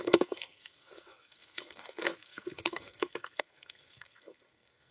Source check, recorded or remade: remade